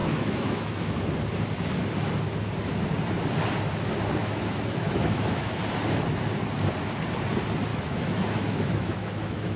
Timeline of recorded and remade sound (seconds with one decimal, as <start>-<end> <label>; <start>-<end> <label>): 0.0-1.0 remade; 1.0-4.2 recorded; 4.2-5.6 remade; 5.6-7.7 recorded; 7.7-9.6 remade